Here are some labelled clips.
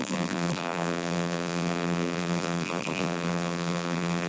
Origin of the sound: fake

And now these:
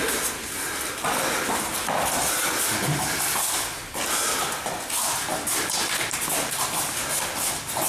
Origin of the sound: real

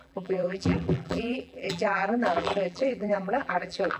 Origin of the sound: fake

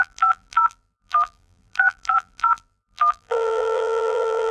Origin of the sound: fake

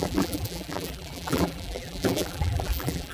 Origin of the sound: fake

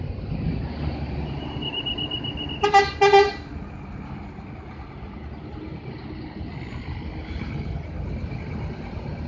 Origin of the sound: real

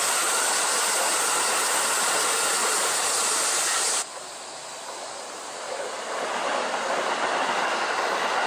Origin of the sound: real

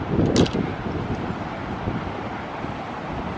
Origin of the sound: real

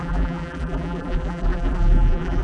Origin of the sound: fake